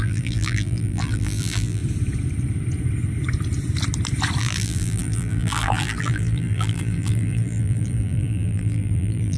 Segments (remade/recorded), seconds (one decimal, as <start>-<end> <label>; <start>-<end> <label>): 0.0-1.8 remade; 1.8-4.4 recorded; 4.4-9.4 remade

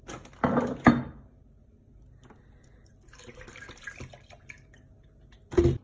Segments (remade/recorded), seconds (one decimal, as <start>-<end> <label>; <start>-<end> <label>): 0.0-5.8 recorded

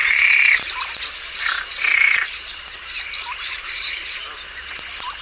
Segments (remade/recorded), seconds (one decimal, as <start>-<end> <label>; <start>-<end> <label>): 0.0-0.7 remade; 0.7-1.9 recorded; 1.9-4.4 remade; 4.4-5.2 recorded